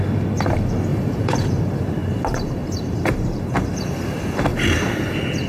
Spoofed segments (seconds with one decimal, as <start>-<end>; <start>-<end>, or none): 0.9-1.6; 2.0-3.4; 4.5-5.1